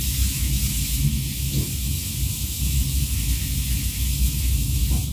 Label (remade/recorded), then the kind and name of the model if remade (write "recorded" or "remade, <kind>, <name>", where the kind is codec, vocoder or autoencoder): remade, autoencoder, DAC-VAE